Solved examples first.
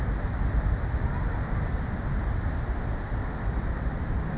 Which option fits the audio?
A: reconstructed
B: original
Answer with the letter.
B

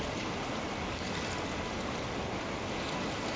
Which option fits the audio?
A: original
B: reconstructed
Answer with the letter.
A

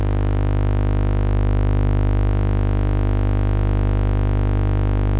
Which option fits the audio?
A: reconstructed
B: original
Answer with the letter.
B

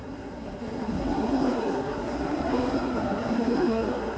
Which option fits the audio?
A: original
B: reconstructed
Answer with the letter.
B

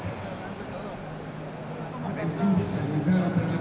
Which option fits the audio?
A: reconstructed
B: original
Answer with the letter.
B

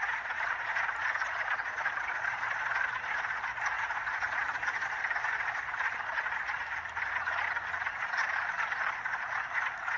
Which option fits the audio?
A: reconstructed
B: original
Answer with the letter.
B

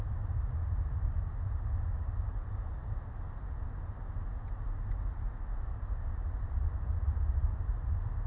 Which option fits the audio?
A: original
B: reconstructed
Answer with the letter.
A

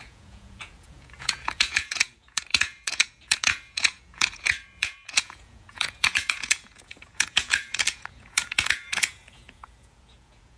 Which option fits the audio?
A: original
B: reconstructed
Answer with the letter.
B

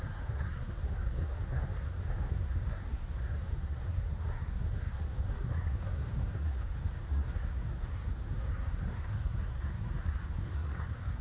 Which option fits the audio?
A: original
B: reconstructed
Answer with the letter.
B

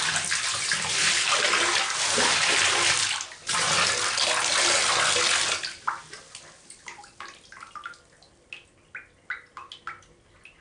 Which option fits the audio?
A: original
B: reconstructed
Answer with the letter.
A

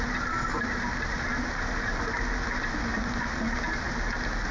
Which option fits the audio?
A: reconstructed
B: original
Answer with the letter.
B